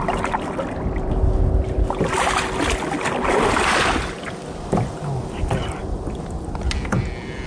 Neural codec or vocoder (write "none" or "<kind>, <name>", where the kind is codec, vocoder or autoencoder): none